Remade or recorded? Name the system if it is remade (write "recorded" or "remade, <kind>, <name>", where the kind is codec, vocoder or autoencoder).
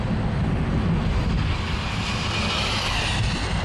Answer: recorded